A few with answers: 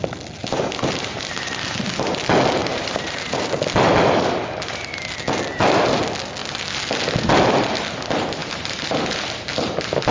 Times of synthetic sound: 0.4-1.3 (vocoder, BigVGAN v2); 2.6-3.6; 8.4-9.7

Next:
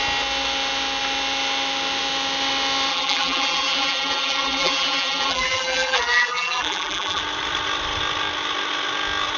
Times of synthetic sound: 2.9-7.2 (vocoder, BigVGAN v2)

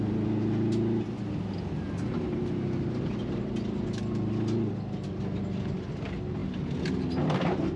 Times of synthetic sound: none